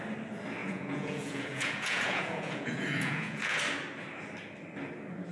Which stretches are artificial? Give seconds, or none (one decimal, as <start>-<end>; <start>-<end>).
0.6-3.6